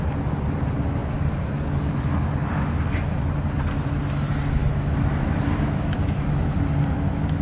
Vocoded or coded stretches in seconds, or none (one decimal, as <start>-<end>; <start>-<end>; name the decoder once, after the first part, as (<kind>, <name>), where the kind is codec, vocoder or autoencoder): 4.6-6.4 (autoencoder, DAC-VAE)